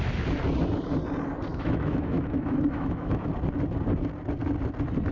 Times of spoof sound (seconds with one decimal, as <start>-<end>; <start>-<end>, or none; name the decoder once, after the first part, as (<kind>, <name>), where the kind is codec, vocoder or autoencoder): 1.5-3.3 (autoencoder, DAC-VAE)